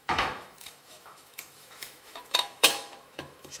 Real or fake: fake